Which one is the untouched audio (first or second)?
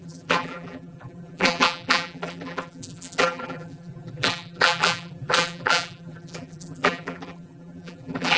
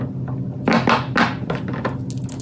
second